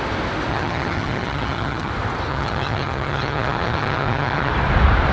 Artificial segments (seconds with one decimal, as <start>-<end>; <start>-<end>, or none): 0.5-1.9; 2.3-4.5